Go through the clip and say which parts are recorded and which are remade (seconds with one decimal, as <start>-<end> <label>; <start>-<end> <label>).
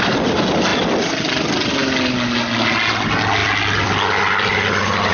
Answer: 0.0-5.1 recorded